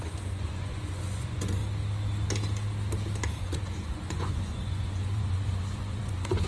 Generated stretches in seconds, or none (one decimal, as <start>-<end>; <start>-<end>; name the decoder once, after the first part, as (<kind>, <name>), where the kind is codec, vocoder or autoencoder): 0.0-1.6 (vocoder, Vocos); 3.4-6.5